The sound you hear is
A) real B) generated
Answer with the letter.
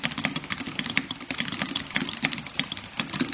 A